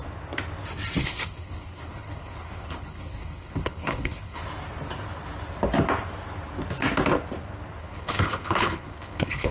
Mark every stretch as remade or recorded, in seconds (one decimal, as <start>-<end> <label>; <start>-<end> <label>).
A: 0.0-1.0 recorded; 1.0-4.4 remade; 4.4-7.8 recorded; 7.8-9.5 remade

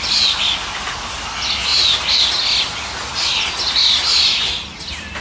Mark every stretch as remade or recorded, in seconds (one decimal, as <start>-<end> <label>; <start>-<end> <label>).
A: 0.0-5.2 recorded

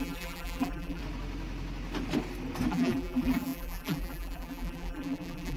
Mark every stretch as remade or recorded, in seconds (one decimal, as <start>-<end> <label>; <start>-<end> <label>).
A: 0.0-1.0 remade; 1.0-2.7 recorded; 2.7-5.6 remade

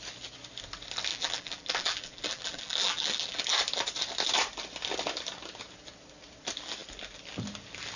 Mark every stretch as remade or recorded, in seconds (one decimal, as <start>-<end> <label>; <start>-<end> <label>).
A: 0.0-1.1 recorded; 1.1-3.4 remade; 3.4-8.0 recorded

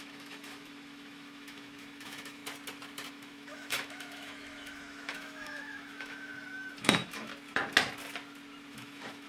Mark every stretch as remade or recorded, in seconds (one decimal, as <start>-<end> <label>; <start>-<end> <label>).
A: 0.0-2.4 remade; 2.4-3.1 recorded; 3.1-6.3 remade; 6.3-6.8 recorded; 6.8-7.3 remade; 7.3-8.7 recorded; 8.7-9.3 remade

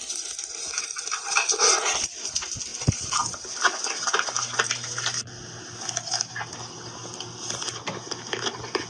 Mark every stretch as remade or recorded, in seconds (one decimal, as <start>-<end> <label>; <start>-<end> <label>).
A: 0.0-2.7 recorded; 2.7-5.6 remade; 5.6-8.9 recorded

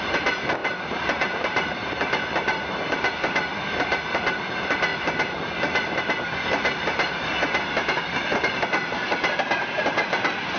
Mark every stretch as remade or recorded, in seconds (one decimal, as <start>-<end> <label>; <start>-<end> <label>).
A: 0.0-0.6 recorded; 0.6-3.1 remade; 3.1-10.6 recorded